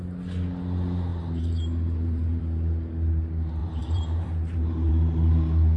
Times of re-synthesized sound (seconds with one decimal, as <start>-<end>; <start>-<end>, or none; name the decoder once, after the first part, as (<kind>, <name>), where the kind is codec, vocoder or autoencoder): 1.1-2.4 (vocoder, BigVGAN v2); 3.6-4.9